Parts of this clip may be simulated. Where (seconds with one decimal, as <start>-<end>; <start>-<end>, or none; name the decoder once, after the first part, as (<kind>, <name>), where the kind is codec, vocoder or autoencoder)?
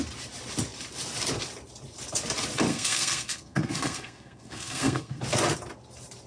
2.7-5.2 (codec, SNAC)